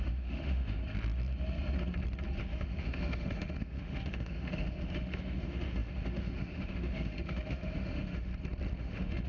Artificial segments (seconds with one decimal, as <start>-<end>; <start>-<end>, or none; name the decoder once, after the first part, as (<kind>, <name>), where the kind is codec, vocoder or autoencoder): 0.0-0.8 (autoencoder, DAC-VAE); 2.4-8.3; 8.8-9.3